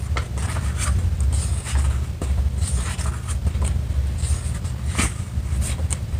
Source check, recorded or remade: remade